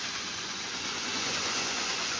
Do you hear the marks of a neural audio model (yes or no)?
yes